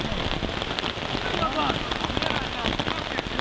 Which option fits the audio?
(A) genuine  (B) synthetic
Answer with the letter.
A